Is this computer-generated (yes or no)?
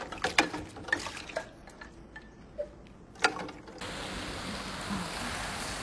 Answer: no